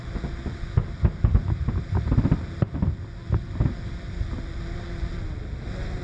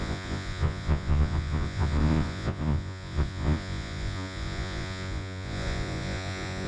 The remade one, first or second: second